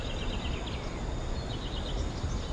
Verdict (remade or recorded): recorded